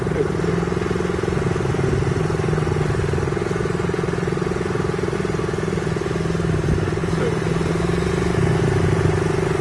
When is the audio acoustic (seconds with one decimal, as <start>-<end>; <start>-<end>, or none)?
0.0-9.6